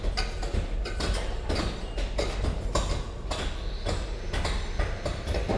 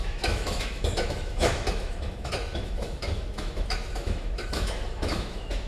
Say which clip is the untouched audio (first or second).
first